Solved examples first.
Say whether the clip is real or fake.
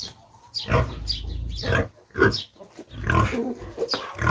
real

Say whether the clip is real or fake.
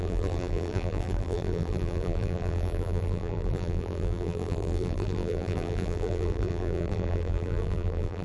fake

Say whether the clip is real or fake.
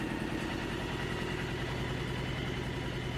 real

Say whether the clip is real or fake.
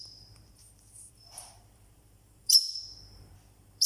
fake